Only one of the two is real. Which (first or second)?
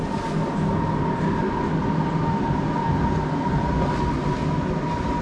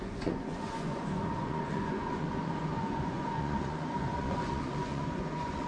first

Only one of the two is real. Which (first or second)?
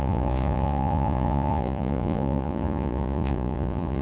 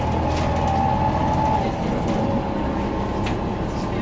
second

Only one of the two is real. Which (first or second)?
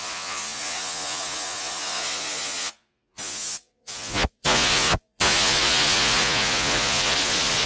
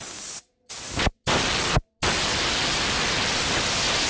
second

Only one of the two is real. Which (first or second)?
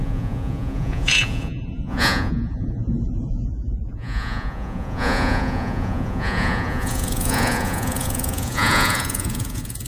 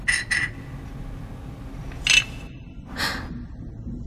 second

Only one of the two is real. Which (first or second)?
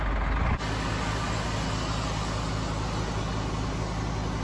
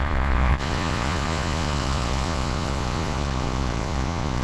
first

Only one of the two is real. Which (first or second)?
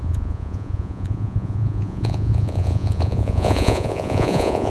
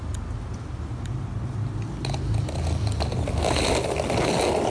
second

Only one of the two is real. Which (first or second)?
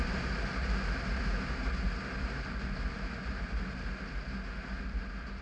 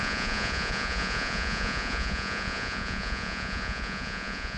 first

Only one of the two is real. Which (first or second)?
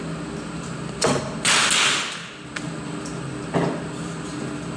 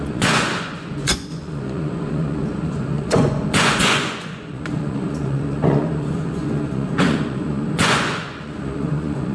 first